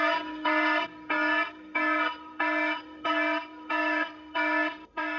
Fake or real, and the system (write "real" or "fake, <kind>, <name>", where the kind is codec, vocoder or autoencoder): fake, codec, SNAC